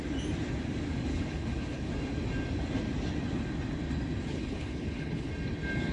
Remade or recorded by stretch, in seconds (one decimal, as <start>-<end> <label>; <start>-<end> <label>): 0.0-1.1 recorded; 1.1-1.9 remade; 1.9-4.3 recorded; 4.3-5.3 remade; 5.3-5.9 recorded